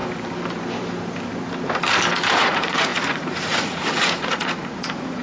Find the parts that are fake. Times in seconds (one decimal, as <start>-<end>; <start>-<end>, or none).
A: 2.3-5.2

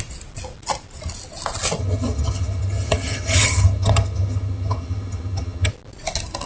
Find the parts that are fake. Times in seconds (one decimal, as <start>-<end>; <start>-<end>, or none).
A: 1.8-5.7

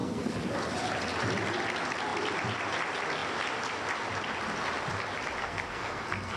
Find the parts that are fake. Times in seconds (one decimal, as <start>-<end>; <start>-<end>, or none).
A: 0.0-0.5; 5.4-6.4

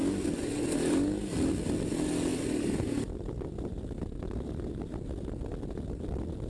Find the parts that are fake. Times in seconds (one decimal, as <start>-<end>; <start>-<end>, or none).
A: none

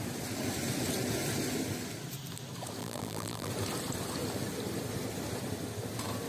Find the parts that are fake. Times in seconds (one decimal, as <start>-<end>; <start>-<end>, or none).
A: 2.8-3.5